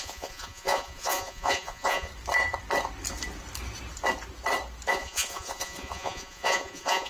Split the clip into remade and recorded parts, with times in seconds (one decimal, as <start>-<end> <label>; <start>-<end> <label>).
0.0-2.1 remade; 2.1-4.9 recorded; 4.9-7.1 remade